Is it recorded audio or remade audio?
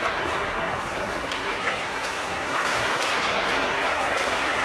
remade